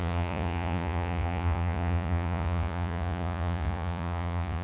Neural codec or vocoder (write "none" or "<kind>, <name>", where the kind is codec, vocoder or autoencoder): vocoder, Vocos